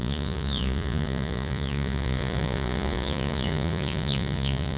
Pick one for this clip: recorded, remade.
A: remade